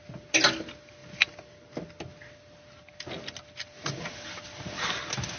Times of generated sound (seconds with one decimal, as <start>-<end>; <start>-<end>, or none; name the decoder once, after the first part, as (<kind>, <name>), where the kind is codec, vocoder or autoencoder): none